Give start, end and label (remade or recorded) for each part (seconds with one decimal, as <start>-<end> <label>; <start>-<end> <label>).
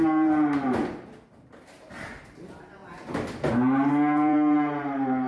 0.0-0.8 remade; 0.8-1.8 recorded; 1.8-2.8 remade; 2.8-3.5 recorded; 3.5-5.3 remade